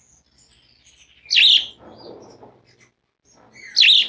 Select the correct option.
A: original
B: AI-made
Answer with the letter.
A